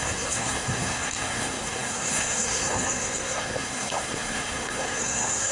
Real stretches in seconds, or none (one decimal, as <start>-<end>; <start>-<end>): none